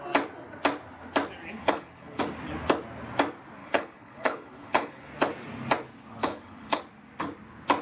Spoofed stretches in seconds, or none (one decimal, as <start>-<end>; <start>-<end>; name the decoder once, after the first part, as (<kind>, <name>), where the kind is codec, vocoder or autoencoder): 1.6-2.2 (codec, HILCodec); 3.6-5.1; 6.2-6.8